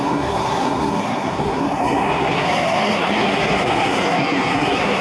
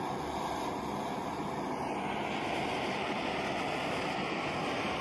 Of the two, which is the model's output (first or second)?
first